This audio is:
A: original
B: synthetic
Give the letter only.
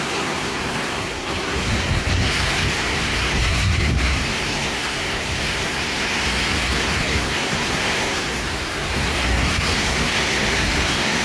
B